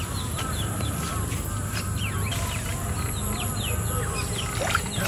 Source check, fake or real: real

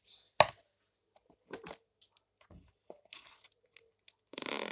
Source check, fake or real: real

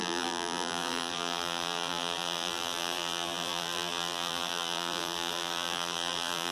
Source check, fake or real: fake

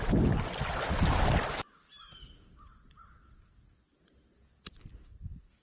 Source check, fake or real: real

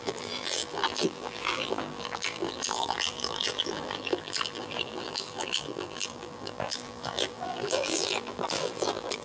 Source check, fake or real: fake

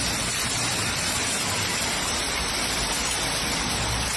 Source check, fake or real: fake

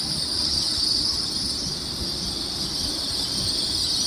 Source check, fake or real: real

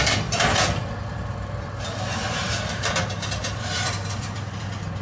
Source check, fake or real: fake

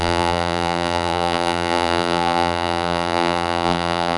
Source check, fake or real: fake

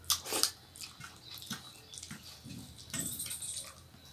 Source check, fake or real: real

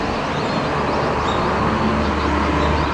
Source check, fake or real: real